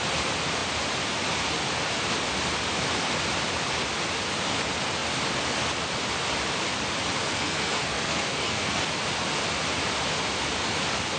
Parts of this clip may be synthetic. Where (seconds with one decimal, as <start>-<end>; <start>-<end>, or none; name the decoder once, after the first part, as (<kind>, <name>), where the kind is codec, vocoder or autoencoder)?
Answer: 7.2-8.8 (codec, SNAC)

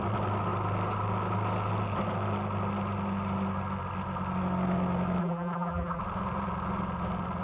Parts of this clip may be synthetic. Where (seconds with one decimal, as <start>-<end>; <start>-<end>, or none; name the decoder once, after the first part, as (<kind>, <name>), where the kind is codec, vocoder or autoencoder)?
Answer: 5.2-6.0 (vocoder, BigVGAN v2)

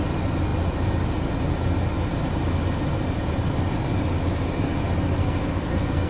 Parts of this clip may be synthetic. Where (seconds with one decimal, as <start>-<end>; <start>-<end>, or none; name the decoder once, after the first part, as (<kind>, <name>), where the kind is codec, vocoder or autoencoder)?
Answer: 5.2-6.1 (codec, SNAC)

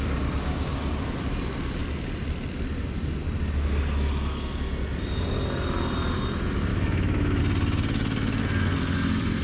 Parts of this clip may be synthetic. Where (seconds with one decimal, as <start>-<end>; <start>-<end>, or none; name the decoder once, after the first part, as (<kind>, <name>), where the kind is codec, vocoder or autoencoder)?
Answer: 6.7-7.4 (autoencoder, DAC-VAE)

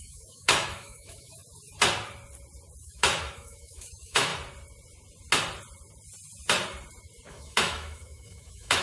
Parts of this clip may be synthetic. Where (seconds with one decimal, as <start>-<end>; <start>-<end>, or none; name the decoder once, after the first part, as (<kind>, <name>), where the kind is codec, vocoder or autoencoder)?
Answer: 0.0-1.4 (autoencoder, DAC-VAE); 2.8-4.3; 7.3-8.8

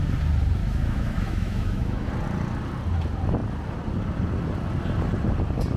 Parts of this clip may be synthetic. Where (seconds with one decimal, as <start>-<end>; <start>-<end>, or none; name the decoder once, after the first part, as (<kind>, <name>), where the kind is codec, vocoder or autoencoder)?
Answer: 0.6-2.1 (autoencoder, DAC-VAE)

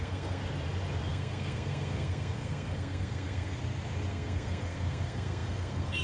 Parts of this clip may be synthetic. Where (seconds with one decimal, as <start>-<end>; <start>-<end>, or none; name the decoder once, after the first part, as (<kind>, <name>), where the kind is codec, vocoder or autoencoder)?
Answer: 0.0-0.4 (codec, SNAC); 1.1-3.6; 4.1-6.0

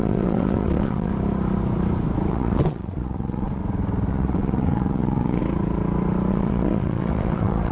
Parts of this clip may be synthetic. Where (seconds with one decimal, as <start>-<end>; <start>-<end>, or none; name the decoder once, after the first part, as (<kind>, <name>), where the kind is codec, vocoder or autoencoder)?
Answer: 0.0-1.1 (vocoder, WaveNeXt); 2.3-3.6; 4.1-5.4; 6.3-7.7